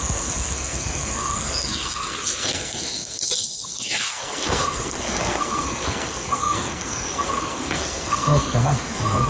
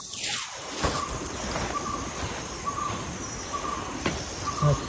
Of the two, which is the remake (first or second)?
first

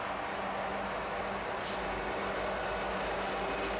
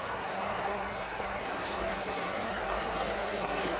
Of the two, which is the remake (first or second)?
second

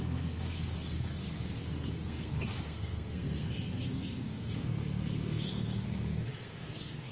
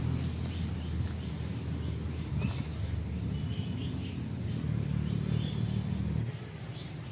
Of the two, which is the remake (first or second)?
first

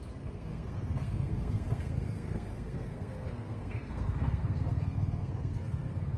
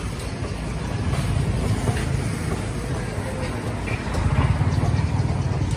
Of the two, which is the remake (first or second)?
first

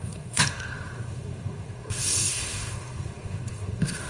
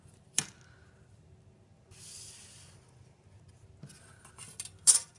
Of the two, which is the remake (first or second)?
first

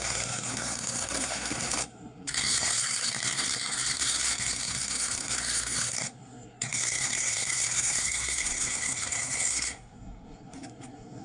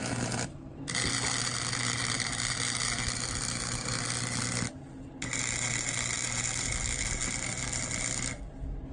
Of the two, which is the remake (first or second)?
first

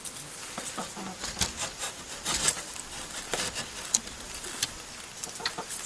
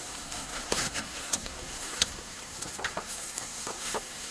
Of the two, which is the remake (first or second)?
second